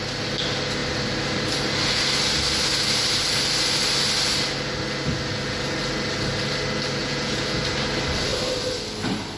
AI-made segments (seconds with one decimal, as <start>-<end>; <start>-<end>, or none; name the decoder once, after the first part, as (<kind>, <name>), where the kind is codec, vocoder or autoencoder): 7.0-7.6 (vocoder, Vocos)